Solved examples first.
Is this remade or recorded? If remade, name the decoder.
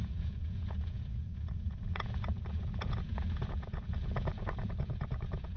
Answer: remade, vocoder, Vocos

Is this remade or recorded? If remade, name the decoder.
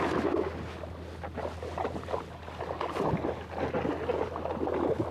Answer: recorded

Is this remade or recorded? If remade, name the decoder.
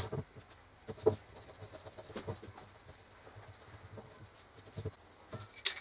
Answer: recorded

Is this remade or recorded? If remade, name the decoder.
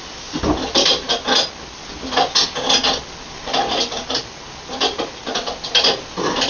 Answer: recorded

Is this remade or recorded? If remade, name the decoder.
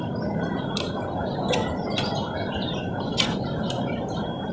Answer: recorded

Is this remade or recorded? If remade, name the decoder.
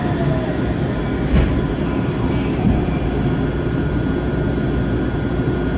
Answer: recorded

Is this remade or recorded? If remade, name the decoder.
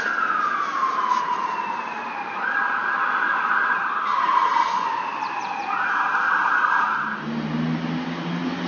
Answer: recorded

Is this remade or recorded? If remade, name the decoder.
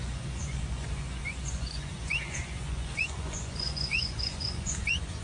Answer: remade, vocoder, Vocos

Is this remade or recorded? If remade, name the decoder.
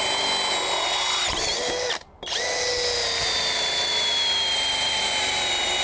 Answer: recorded